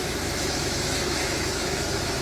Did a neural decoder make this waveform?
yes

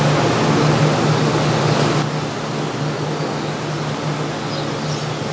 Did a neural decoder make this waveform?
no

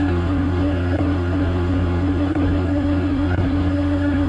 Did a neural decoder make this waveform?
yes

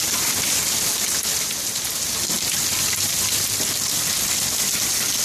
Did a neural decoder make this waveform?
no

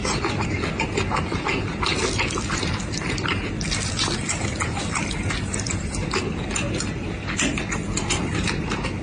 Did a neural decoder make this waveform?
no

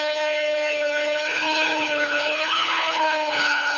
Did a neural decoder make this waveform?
yes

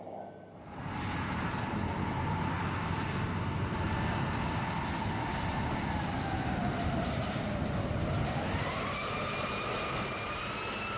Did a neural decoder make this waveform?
no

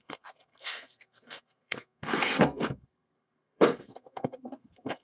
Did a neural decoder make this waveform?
yes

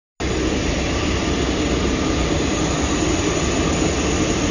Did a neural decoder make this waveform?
no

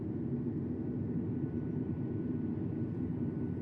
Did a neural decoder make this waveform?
no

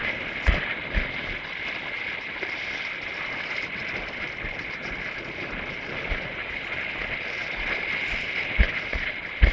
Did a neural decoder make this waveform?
no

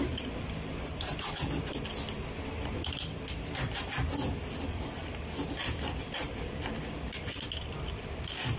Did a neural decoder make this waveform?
no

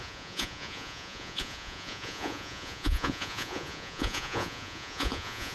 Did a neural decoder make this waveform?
yes